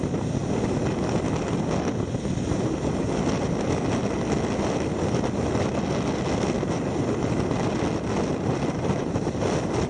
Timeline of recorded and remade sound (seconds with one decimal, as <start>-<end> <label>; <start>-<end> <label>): 0.0-9.9 recorded